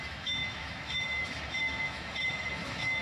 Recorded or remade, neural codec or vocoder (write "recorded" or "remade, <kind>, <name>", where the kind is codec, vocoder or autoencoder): remade, autoencoder, DAC-VAE